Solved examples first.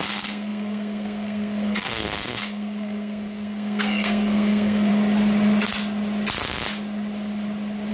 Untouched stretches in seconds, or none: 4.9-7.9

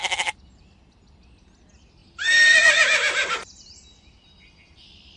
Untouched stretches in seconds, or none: 0.0-2.0; 4.3-5.2

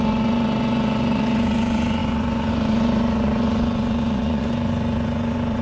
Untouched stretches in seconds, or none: none

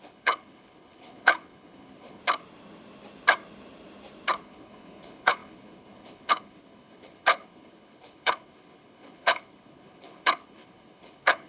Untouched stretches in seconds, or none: 2.2-4.4

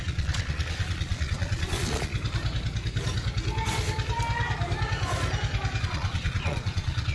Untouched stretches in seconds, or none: 2.1-5.8

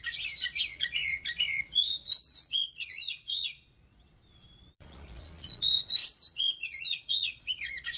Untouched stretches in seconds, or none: none

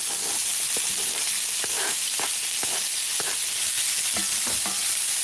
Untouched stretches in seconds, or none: 0.0-1.7; 2.2-5.2